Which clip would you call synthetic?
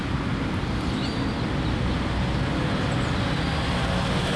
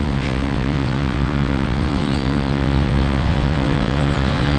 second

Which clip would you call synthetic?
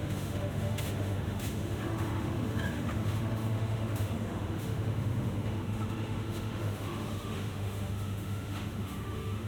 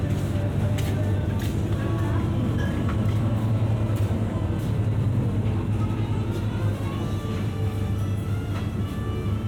first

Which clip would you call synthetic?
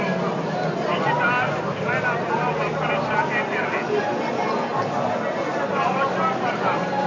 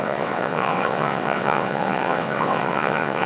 second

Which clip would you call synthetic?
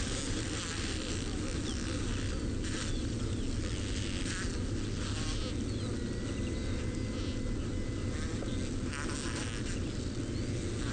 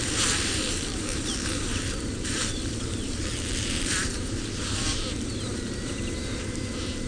second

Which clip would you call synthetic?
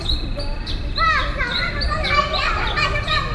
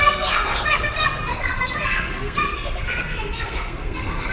second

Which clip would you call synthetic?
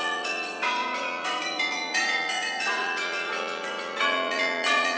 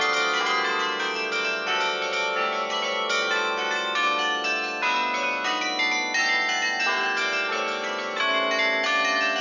first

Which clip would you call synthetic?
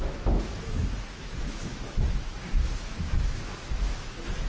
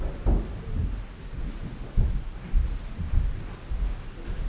first